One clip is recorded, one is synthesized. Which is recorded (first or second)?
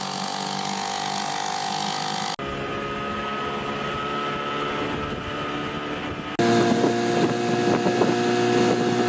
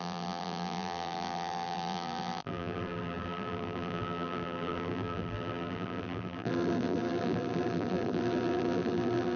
first